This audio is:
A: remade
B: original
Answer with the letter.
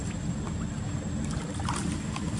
B